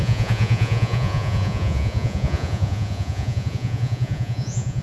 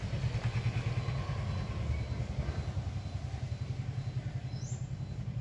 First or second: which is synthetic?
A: first